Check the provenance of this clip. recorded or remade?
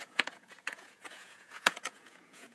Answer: remade